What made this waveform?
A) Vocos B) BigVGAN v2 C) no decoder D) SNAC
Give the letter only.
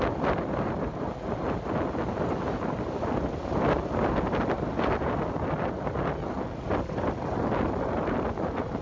C